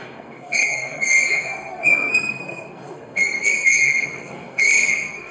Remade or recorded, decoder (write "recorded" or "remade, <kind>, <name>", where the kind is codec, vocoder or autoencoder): remade, codec, SNAC